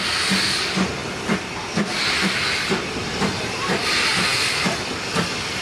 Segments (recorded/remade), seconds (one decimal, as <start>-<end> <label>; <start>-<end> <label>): 0.0-5.6 recorded